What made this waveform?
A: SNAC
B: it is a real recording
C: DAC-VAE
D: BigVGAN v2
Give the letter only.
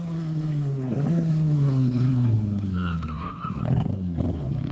A